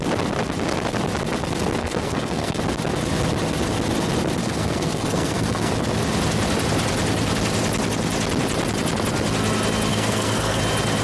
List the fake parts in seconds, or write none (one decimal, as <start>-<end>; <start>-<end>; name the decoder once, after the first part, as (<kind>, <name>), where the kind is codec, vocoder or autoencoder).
1.8-2.6 (codec, SNAC); 4.4-5.7; 9.9-10.6